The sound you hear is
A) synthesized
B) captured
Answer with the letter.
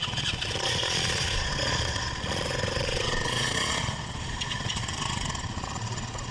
A